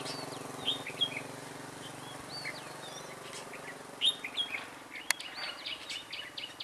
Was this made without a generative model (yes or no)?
yes